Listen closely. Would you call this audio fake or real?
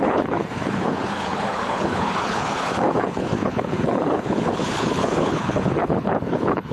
fake